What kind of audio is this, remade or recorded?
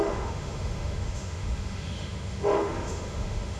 remade